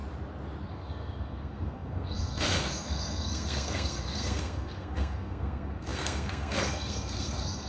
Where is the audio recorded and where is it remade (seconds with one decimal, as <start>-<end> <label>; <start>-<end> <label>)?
0.0-0.7 recorded; 0.7-7.7 remade